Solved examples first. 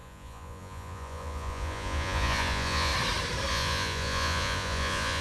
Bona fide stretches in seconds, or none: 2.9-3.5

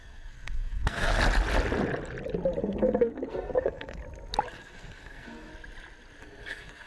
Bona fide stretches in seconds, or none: 1.1-2.6; 4.0-4.5; 5.5-6.2

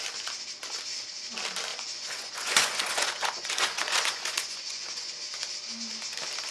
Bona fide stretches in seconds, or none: 0.0-1.7; 5.1-6.5

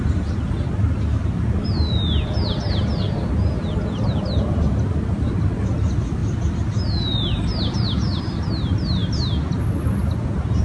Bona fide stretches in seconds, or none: 0.0-10.6

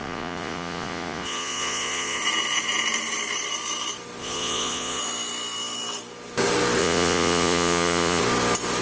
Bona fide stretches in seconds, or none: 2.2-4.2; 5.0-6.8; 8.2-8.8